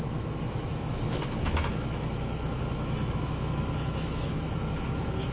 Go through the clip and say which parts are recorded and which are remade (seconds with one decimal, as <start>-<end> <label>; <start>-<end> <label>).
0.0-5.3 remade